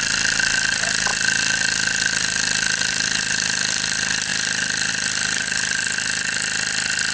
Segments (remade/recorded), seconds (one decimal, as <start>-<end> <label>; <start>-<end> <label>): 0.0-7.1 recorded